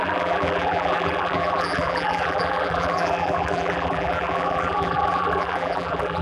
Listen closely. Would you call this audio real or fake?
fake